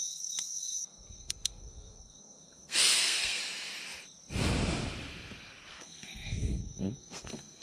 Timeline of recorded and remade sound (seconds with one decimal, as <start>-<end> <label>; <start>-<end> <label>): 0.0-3.4 remade; 3.4-5.7 recorded; 5.7-7.6 remade